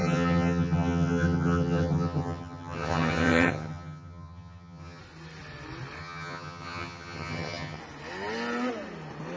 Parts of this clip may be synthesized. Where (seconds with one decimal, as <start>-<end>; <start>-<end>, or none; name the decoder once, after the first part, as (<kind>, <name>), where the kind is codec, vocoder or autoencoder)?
0.0-5.0 (vocoder, HiFi-GAN); 6.0-7.8